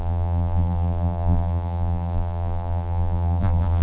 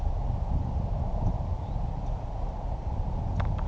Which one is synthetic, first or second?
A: first